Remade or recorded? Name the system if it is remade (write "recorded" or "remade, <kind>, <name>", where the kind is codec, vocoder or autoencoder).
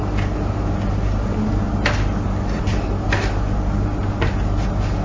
recorded